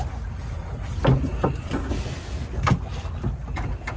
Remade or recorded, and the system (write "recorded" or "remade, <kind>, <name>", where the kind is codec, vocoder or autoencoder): recorded